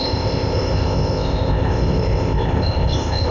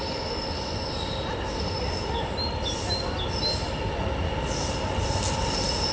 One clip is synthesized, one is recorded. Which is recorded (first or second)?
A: second